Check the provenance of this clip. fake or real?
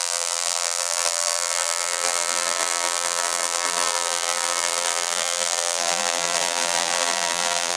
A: fake